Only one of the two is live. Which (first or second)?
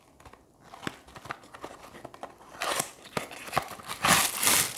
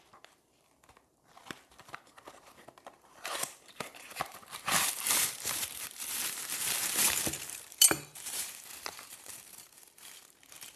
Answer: first